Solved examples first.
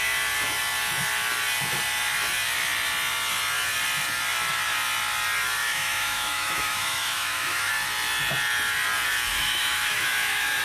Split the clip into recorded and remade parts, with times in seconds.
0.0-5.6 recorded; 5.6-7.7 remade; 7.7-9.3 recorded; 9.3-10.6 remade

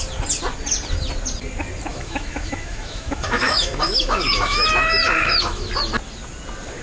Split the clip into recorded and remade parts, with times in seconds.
0.0-1.9 recorded; 1.9-5.7 remade; 5.7-6.8 recorded

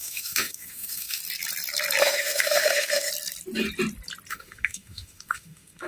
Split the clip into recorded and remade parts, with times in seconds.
0.0-1.2 remade; 1.2-2.0 recorded; 2.0-3.1 remade; 3.1-4.3 recorded; 4.3-5.9 remade

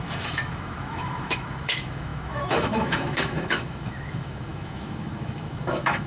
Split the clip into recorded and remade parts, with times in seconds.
0.0-6.1 remade

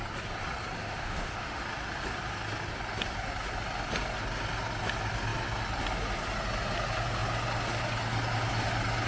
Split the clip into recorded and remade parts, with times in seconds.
0.0-0.8 recorded; 0.8-1.6 remade; 1.6-9.1 recorded

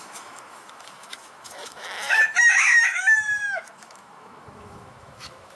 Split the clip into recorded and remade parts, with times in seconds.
0.0-5.6 remade

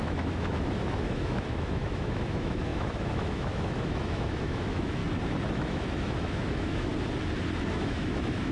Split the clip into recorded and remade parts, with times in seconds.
0.0-5.0 remade; 5.0-5.5 recorded; 5.5-6.9 remade; 6.9-7.7 recorded; 7.7-8.5 remade

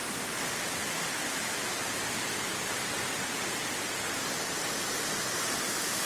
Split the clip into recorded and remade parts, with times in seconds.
0.0-6.1 recorded